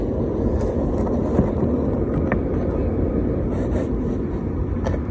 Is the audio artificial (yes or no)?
no